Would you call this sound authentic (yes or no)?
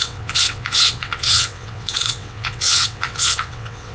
no